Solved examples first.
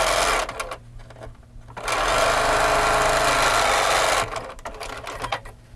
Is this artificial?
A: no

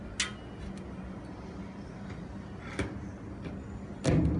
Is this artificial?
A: no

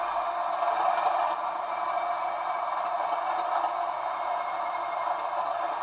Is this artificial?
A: no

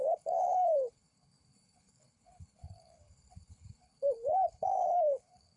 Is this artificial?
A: yes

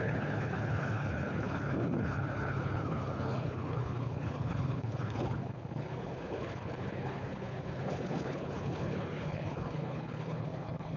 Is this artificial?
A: yes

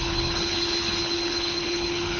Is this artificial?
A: yes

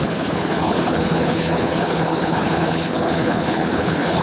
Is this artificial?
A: yes